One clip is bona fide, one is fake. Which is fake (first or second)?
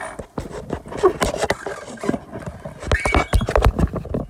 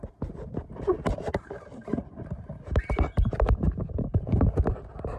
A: second